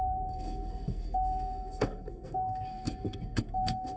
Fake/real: fake